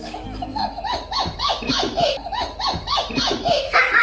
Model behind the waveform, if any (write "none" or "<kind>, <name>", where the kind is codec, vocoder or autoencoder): autoencoder, DAC-VAE